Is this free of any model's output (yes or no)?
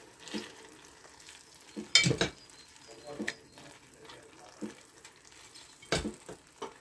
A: yes